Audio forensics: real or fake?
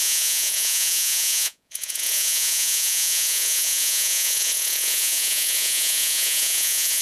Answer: fake